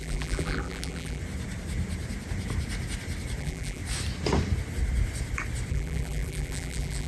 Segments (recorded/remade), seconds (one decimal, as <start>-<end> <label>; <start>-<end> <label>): 0.0-1.2 remade; 1.2-3.4 recorded; 3.4-3.8 remade; 3.8-5.7 recorded; 5.7-7.1 remade